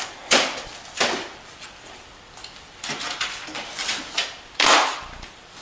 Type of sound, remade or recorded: remade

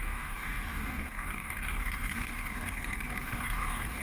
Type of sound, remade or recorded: remade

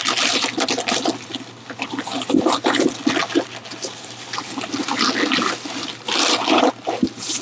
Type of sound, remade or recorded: recorded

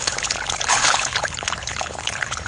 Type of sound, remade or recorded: remade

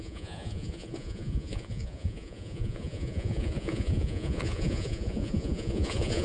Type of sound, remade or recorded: remade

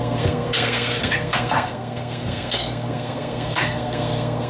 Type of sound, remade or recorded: remade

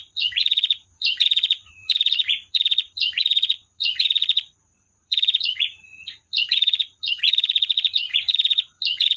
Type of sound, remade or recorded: remade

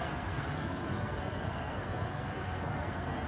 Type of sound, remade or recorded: remade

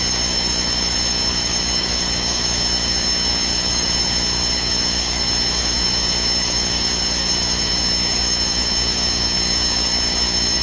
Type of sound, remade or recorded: remade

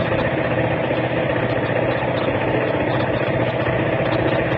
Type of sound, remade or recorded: recorded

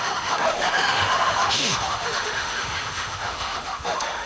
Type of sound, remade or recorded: remade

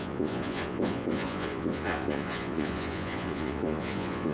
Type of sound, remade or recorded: remade